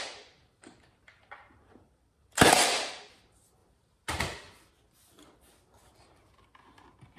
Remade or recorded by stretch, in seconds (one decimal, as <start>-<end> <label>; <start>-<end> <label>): 0.0-0.4 recorded; 0.4-3.0 remade; 3.0-3.6 recorded; 3.6-4.2 remade; 4.2-7.2 recorded